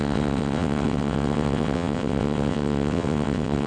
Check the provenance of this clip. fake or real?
fake